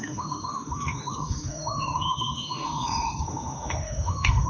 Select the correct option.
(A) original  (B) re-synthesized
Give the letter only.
B